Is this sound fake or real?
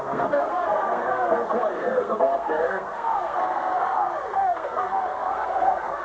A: fake